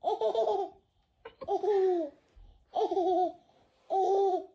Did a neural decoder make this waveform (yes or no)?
no